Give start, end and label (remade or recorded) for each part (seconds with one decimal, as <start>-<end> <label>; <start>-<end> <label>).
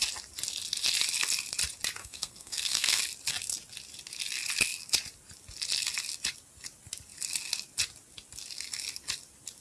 0.0-2.0 recorded; 2.0-3.0 remade; 3.0-9.6 recorded